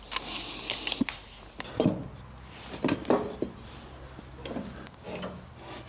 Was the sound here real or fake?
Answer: real